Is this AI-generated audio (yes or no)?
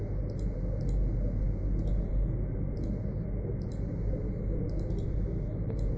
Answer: no